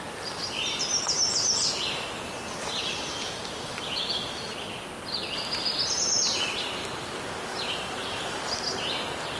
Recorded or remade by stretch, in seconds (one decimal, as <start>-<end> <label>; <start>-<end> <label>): 0.0-9.4 recorded